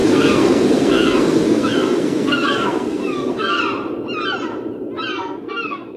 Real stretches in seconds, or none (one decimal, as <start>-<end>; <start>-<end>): 3.6-5.1